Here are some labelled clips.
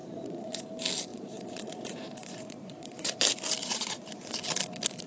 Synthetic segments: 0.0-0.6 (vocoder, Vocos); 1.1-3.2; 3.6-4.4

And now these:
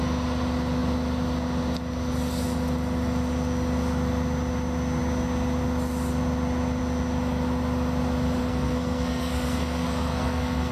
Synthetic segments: 8.4-10.7 (codec, SNAC)